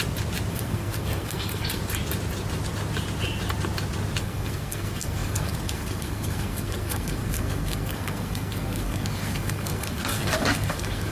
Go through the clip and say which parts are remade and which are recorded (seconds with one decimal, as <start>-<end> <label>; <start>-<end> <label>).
0.0-0.5 recorded; 0.5-1.8 remade; 1.8-4.2 recorded; 4.2-11.1 remade